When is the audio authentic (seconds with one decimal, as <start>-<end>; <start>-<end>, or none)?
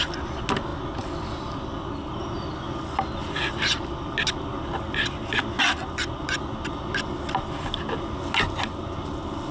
0.0-9.5